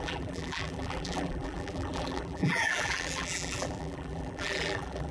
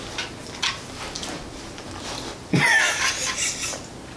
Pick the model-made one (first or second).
first